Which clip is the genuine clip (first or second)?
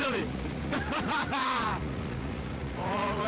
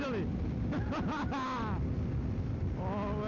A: second